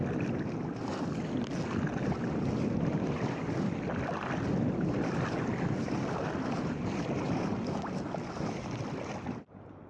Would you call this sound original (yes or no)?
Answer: yes